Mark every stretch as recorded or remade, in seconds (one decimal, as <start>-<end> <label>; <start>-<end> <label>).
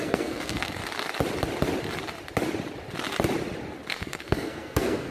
0.0-0.8 remade; 0.8-3.9 recorded; 3.9-5.1 remade